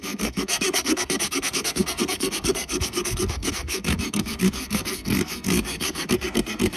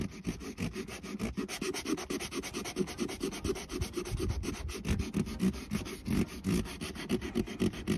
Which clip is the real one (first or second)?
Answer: second